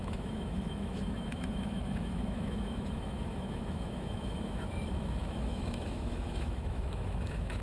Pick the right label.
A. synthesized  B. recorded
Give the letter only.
A